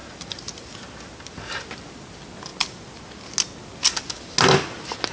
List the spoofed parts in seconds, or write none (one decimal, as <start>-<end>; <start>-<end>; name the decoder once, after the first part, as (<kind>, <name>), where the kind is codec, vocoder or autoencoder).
none